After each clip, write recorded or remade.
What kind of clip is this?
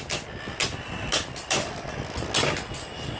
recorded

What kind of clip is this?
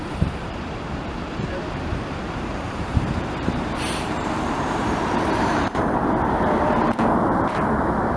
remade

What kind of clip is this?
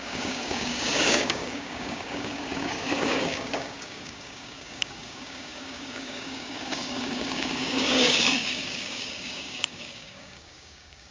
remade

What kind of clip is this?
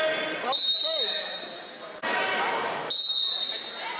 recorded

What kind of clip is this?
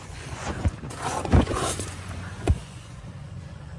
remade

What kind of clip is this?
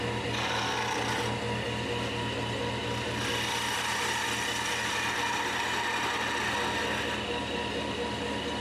recorded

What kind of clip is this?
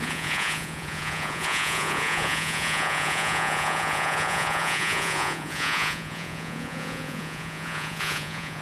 remade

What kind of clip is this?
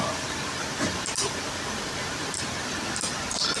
recorded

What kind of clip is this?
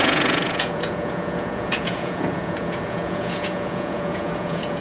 remade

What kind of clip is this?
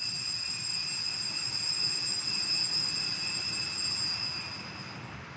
recorded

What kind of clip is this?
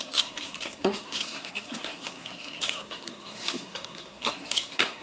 remade